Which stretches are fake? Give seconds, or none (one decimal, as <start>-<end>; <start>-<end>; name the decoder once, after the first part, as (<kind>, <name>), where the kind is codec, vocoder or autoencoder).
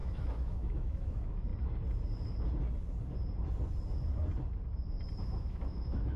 0.0-1.5 (autoencoder, DAC-VAE); 5.2-6.2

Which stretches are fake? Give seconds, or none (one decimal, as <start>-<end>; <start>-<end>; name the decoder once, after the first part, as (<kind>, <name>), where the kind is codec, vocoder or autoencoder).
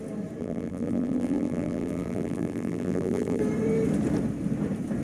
0.4-3.4 (vocoder, BigVGAN v2)